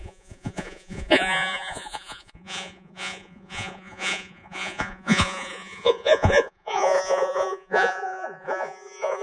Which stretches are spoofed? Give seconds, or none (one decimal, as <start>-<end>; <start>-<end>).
0.0-9.2